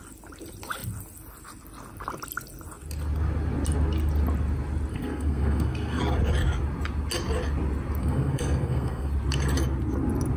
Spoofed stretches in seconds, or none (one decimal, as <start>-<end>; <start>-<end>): 4.9-6.0; 8.0-9.1